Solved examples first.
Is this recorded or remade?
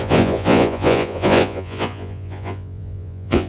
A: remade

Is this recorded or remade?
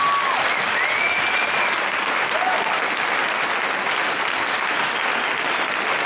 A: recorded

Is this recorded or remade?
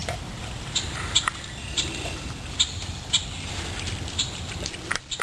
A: remade